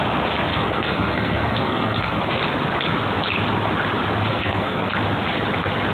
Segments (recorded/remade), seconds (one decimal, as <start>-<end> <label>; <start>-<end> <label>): 0.0-0.5 recorded; 0.5-2.4 remade; 2.4-4.3 recorded; 4.3-4.9 remade; 4.9-5.9 recorded